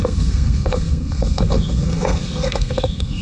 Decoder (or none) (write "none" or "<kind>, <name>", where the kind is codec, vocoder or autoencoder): codec, SNAC